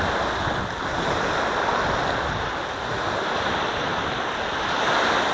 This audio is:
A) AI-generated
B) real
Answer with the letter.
B